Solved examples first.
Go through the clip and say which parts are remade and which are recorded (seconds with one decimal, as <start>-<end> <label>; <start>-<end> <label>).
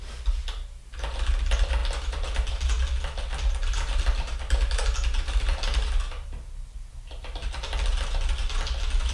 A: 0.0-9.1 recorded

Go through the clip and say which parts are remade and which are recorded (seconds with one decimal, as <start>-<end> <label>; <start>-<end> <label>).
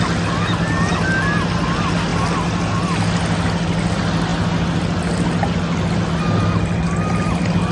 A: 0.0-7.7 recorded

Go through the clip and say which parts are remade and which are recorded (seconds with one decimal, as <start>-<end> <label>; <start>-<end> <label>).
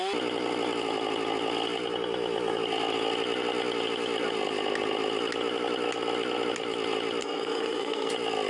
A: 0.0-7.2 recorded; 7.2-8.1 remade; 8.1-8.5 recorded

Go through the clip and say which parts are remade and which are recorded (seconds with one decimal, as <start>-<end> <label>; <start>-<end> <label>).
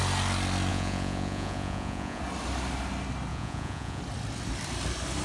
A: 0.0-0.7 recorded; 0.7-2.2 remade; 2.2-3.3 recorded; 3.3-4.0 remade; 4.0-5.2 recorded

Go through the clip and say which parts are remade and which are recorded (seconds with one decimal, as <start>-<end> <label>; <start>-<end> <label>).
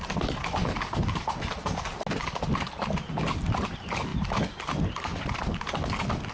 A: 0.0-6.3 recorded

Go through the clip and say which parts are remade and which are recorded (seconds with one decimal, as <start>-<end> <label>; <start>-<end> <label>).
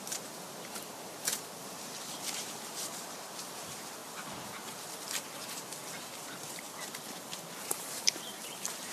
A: 0.0-4.0 remade; 4.0-7.6 recorded; 7.6-8.9 remade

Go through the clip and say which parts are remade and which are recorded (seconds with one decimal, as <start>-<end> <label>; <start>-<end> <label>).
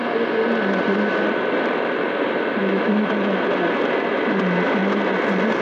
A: 0.0-2.6 recorded; 2.6-3.1 remade; 3.1-5.6 recorded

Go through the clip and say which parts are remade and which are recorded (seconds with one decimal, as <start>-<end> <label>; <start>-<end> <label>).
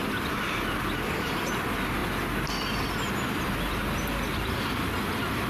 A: 0.0-5.5 recorded